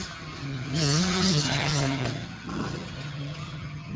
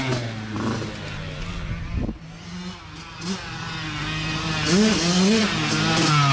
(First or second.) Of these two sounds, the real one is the second